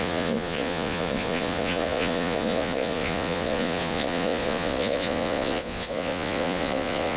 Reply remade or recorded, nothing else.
remade